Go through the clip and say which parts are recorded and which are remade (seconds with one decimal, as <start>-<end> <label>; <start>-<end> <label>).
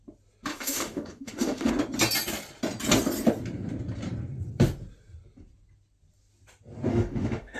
0.0-0.5 recorded; 0.5-1.7 remade; 1.7-6.9 recorded; 6.9-7.6 remade